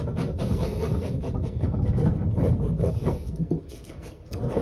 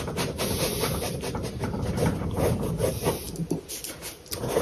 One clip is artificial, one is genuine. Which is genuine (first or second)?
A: second